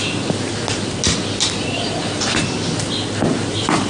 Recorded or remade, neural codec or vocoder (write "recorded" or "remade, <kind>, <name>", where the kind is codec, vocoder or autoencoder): recorded